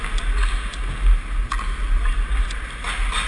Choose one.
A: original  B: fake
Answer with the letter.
A